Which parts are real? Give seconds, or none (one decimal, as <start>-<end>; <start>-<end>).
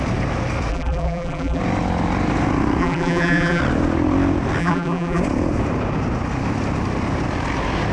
0.0-0.7; 1.6-2.8; 3.6-4.6; 5.2-7.9